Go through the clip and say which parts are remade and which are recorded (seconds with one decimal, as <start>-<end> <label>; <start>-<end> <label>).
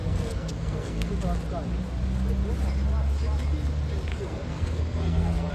0.0-1.1 remade; 1.1-4.1 recorded; 4.1-5.5 remade